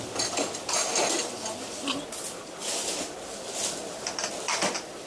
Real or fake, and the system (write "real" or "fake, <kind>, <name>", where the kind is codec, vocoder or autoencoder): real